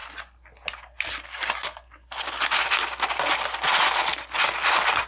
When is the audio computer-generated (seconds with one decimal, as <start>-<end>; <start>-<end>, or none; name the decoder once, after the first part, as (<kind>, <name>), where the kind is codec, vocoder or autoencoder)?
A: none